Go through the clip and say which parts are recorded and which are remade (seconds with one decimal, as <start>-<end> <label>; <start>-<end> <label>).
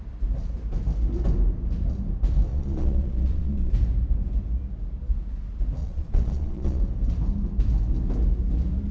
0.0-2.5 recorded; 2.5-3.7 remade; 3.7-5.8 recorded; 5.8-6.8 remade; 6.8-8.9 recorded